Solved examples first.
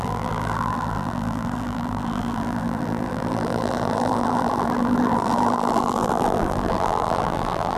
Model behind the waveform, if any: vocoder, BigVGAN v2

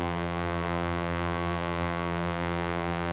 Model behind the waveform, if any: vocoder, BigVGAN v2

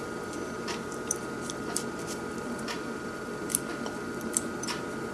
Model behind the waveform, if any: vocoder, BigVGAN v2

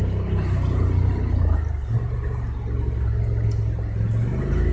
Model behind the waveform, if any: none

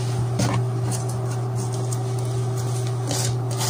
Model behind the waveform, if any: none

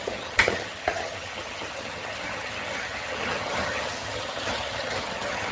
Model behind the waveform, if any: vocoder, HiFi-GAN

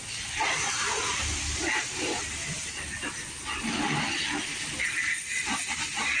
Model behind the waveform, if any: none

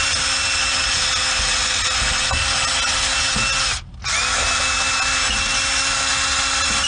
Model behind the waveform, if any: none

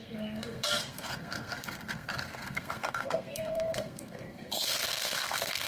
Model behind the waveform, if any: codec, SNAC